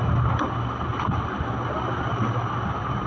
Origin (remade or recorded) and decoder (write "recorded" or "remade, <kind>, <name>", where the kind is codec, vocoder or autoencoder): recorded